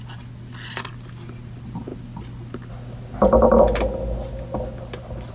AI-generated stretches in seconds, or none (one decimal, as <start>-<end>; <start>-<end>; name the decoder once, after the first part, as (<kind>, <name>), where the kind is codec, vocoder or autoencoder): none